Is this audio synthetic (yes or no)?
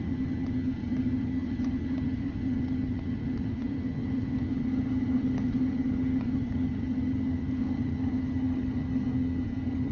yes